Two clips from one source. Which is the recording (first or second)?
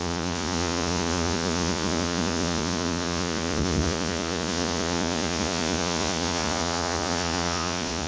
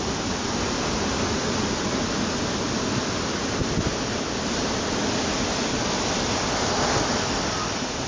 second